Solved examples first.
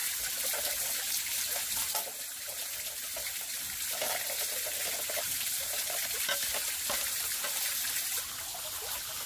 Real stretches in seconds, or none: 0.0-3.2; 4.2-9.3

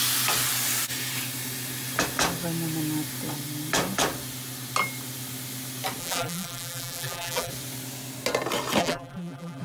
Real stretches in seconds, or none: 0.0-6.0; 7.5-8.8

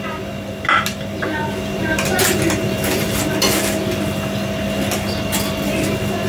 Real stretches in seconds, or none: 0.0-1.8; 3.2-6.3

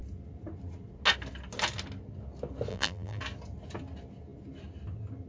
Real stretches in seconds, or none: 0.0-2.7; 3.2-5.3

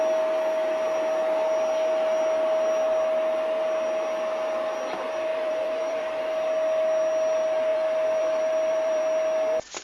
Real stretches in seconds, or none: 0.0-5.3; 6.2-7.7; 9.0-9.8

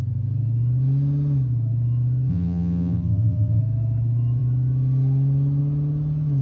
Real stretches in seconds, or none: 0.0-2.3; 3.6-6.4